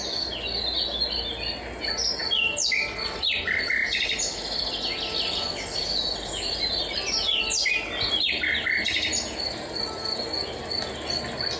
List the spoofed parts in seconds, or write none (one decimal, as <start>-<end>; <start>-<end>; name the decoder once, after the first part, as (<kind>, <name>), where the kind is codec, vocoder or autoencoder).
none